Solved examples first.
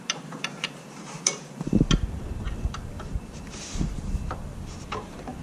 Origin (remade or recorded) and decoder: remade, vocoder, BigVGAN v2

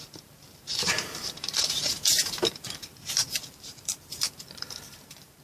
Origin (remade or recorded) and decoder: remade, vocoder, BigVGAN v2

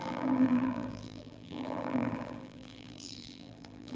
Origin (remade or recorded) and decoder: remade, vocoder, BigVGAN v2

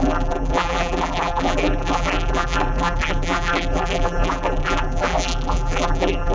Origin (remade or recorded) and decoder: remade, vocoder, BigVGAN v2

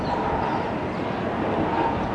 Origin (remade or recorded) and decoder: recorded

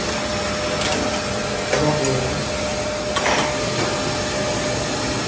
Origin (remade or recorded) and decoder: recorded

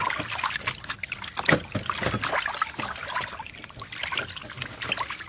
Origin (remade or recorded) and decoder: recorded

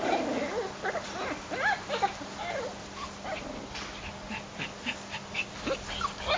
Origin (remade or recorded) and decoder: recorded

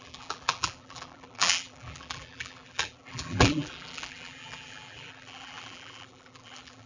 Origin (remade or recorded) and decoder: remade, vocoder, BigVGAN v2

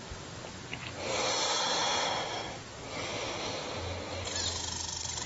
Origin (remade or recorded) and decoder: recorded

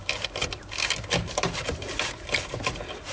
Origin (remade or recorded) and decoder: remade, vocoder, BigVGAN v2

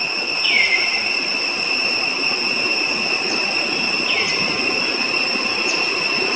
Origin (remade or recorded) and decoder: remade, vocoder, BigVGAN v2